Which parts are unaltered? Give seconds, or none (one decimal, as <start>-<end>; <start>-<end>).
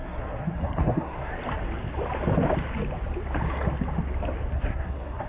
1.3-4.5